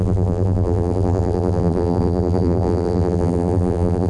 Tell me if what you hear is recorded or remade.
remade